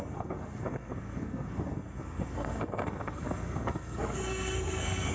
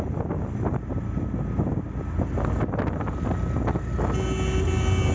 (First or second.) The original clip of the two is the second